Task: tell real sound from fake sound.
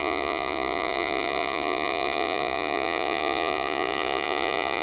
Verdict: fake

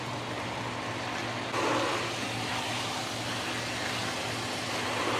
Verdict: real